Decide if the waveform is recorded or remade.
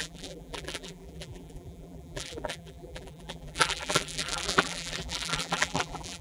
remade